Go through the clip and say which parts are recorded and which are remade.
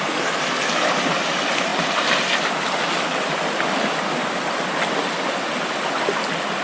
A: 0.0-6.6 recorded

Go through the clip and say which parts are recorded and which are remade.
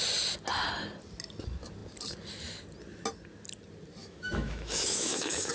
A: 0.0-4.0 recorded; 4.0-5.5 remade